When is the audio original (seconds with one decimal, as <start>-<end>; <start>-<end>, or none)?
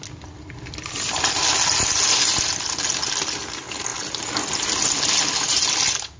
0.0-6.2